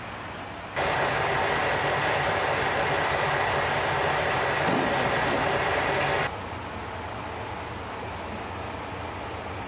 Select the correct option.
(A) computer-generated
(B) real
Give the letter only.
B